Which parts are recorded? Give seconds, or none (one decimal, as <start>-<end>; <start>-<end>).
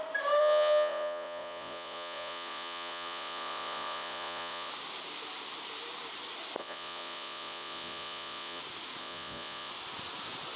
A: 0.0-0.4; 4.7-6.6; 8.6-9.0; 9.7-10.6